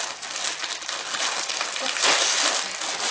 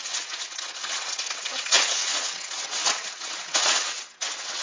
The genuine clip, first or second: first